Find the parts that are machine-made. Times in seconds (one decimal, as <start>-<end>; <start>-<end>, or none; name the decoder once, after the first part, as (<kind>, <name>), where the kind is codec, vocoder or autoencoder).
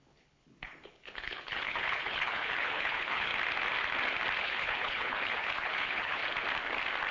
0.0-3.3 (codec, HILCodec); 4.4-6.2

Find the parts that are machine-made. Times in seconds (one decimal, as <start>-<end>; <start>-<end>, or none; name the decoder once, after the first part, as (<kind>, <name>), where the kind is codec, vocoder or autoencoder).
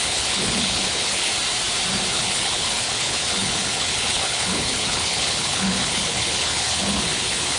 0.0-1.3 (codec, HILCodec); 2.1-7.6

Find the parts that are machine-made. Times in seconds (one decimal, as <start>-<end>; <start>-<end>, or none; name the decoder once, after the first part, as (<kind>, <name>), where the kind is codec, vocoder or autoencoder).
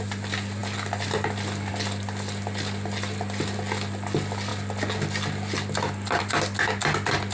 none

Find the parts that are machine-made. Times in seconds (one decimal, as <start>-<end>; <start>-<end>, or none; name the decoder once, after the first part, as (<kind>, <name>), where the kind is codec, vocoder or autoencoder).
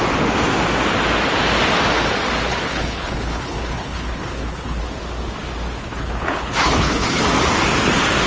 2.5-4.8 (codec, HILCodec); 5.8-7.2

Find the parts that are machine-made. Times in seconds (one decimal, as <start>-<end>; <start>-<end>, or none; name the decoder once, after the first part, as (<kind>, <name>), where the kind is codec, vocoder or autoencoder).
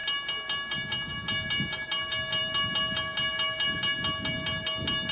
none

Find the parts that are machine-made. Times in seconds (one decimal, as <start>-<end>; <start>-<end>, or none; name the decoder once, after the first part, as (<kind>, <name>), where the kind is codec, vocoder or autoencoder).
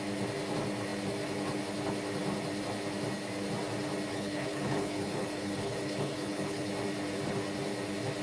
4.1-6.7 (codec, HILCodec)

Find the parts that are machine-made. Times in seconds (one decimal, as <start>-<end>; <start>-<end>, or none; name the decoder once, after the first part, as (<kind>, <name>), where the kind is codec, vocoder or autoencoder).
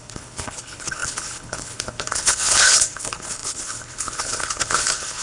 0.0-5.2 (codec, HILCodec)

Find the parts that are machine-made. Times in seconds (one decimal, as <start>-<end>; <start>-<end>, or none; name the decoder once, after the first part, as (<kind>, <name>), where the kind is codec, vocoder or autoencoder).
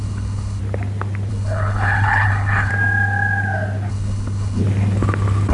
0.0-0.6 (codec, HILCodec); 1.3-2.7; 3.9-4.6